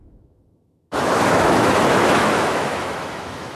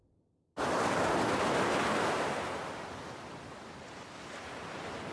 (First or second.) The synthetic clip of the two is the first